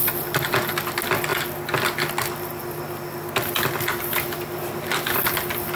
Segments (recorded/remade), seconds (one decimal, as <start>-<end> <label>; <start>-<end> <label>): 0.0-5.8 recorded